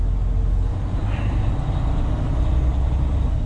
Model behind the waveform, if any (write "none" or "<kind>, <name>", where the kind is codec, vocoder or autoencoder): none